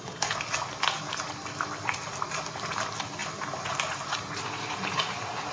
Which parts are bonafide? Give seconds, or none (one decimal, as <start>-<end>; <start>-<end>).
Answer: 0.0-5.5